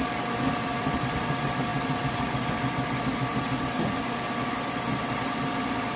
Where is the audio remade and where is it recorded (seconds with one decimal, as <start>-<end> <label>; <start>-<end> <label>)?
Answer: 0.0-6.0 recorded